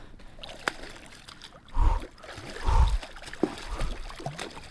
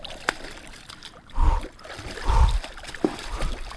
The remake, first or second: second